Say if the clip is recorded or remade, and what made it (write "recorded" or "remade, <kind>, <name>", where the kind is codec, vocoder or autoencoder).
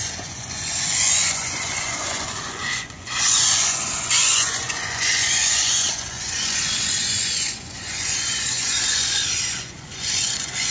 remade, vocoder, Vocos